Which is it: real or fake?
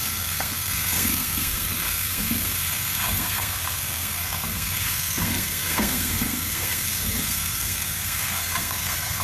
fake